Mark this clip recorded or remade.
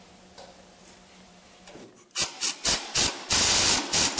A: recorded